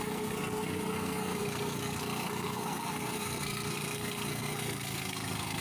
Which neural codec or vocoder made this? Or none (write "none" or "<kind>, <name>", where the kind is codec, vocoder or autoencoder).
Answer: codec, SNAC